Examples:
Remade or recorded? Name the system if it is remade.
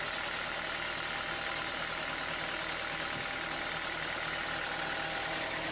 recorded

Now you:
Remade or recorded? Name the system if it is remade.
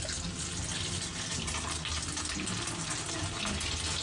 recorded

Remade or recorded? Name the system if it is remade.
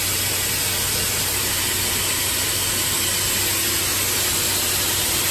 recorded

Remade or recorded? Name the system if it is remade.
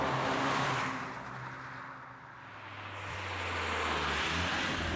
recorded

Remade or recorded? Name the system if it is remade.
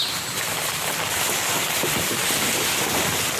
recorded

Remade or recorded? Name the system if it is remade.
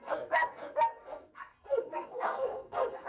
remade, codec, SNAC